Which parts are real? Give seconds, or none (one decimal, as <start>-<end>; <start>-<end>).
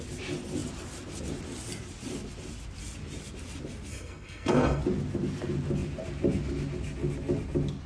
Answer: 0.0-3.9; 4.8-7.9